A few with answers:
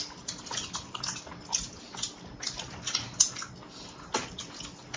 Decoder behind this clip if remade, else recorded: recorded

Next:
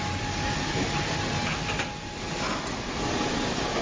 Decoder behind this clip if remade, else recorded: recorded